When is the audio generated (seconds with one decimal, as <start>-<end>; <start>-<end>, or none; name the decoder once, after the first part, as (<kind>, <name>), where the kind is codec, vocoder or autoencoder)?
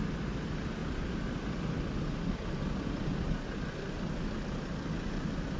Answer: none